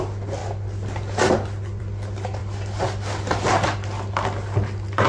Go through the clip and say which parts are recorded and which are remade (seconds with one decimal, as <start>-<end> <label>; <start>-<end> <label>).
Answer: 0.0-5.1 recorded